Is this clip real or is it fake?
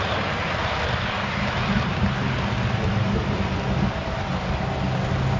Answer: real